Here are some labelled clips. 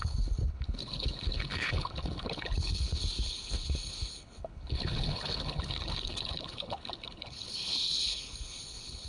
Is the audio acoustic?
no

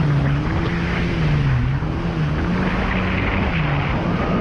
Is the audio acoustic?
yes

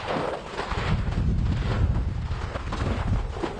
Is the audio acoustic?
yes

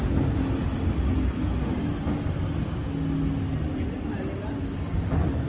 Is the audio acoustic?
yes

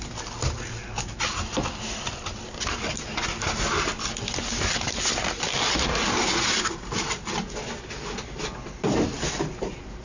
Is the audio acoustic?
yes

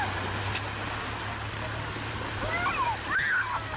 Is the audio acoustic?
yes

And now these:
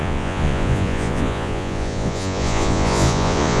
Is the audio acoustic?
no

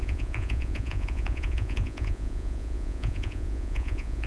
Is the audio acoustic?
no